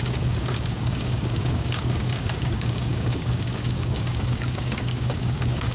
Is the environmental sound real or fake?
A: fake